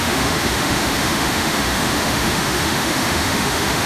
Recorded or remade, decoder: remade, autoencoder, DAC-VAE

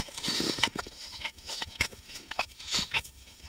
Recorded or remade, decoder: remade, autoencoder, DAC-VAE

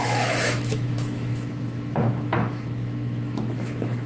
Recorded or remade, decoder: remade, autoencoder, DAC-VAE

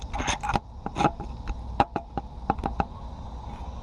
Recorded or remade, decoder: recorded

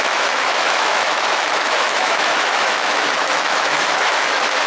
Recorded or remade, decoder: remade, autoencoder, DAC-VAE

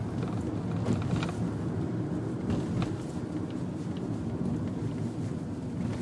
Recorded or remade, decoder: recorded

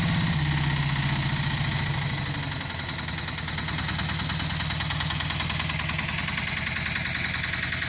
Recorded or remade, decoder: recorded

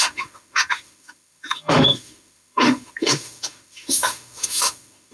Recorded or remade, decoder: remade, autoencoder, DAC-VAE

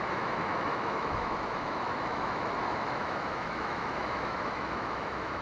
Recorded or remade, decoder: remade, autoencoder, DAC-VAE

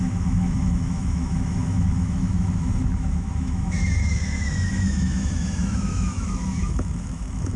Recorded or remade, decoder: remade, autoencoder, DAC-VAE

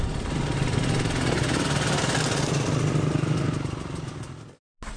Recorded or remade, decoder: recorded